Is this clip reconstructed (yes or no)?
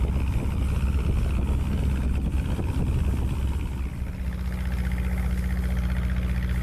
no